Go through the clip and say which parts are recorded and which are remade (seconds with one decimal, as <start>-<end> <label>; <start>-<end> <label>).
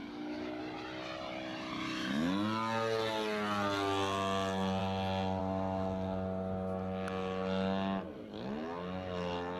0.0-0.6 remade; 0.6-9.6 recorded